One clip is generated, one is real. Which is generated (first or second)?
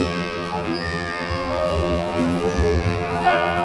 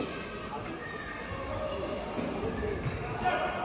first